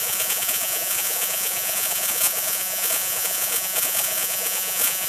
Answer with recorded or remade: remade